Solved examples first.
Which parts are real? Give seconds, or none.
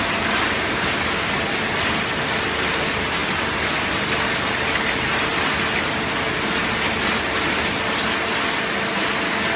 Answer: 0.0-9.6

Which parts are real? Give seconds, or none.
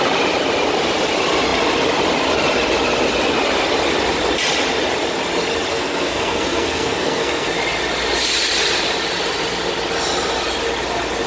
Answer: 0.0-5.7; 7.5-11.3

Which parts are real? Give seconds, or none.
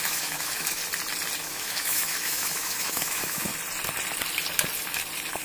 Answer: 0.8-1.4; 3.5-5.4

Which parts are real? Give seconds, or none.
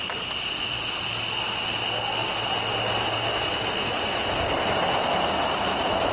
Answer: 0.0-6.1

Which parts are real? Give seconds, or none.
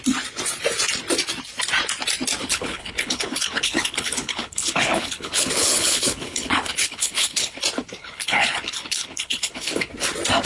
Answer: 0.0-2.4; 7.6-8.0; 9.9-10.5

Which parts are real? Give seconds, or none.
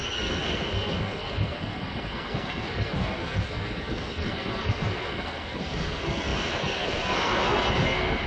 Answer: none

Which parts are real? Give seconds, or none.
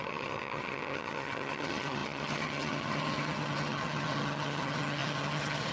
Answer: none